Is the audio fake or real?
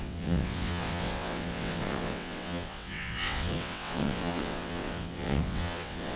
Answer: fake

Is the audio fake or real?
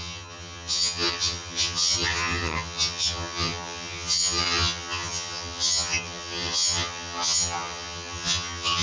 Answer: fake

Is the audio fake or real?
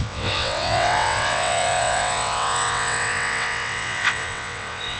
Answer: fake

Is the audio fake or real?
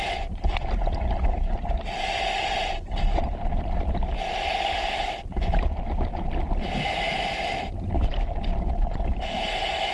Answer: real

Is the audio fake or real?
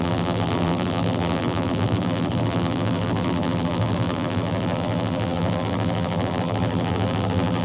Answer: fake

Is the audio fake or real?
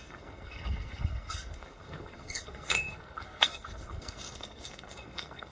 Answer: fake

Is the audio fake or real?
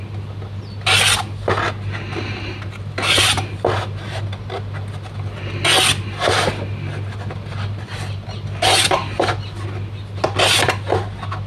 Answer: real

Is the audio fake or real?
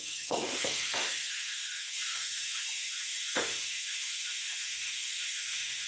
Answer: fake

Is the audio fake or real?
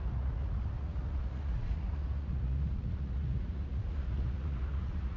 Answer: fake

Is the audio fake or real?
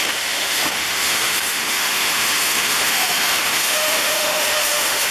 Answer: fake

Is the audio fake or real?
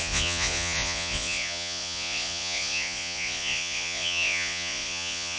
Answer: fake